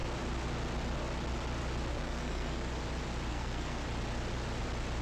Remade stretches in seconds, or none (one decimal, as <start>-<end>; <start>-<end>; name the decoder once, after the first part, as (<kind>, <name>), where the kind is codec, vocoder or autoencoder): 1.9-2.7 (codec, SNAC); 3.3-3.8